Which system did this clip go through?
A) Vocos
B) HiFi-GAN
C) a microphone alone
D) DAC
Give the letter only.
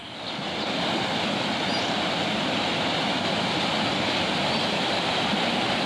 C